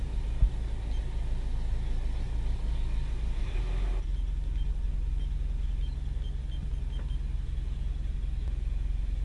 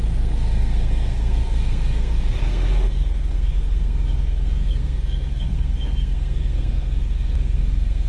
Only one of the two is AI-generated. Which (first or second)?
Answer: second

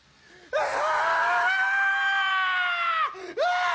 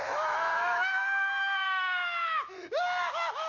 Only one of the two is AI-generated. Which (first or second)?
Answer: second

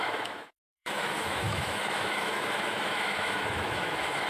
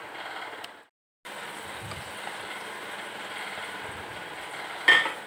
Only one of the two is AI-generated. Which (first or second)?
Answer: first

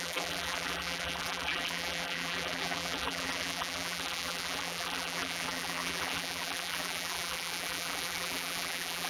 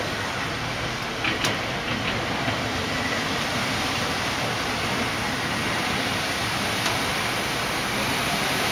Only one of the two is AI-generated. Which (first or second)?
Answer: first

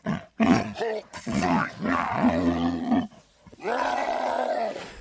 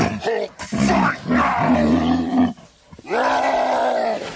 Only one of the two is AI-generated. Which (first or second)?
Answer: first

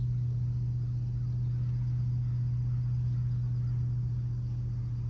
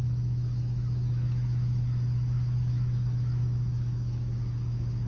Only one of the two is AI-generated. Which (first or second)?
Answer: second